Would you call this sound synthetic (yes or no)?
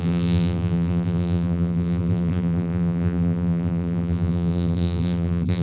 yes